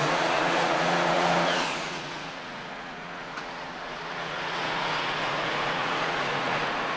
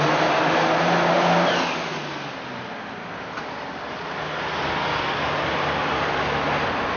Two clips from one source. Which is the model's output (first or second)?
first